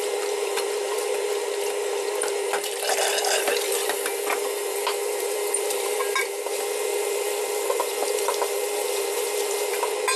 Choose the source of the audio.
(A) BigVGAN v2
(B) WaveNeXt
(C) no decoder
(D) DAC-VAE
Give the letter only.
A